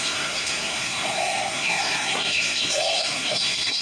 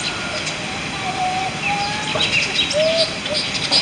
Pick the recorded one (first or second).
second